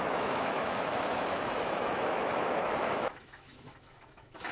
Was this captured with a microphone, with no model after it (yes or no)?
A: no